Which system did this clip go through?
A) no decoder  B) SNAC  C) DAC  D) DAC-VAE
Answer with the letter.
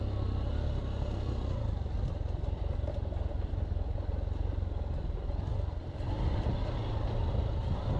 A